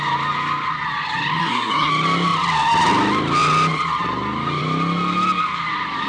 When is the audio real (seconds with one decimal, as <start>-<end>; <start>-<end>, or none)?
0.0-1.4; 1.9-6.1